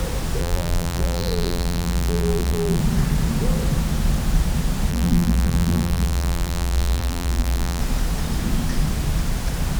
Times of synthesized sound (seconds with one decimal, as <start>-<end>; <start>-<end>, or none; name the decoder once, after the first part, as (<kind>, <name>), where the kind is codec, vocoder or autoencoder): 0.4-2.8 (vocoder, BigVGAN v2); 4.9-7.8